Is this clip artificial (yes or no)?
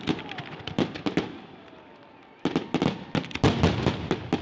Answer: no